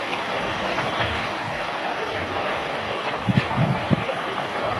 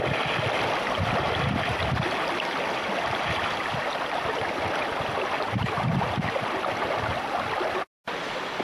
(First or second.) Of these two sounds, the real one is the second